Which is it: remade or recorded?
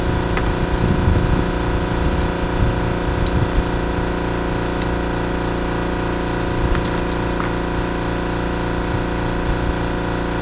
recorded